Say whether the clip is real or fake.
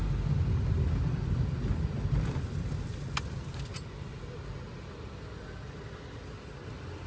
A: real